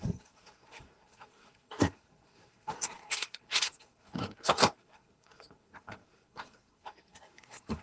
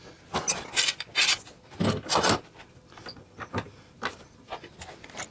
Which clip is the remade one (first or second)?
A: first